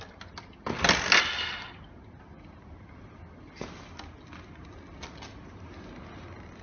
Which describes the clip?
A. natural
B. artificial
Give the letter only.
A